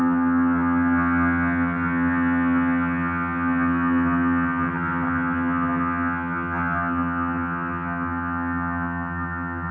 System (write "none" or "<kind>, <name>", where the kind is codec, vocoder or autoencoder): vocoder, HiFi-GAN